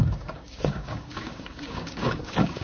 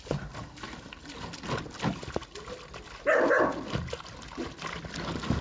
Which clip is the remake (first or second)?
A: first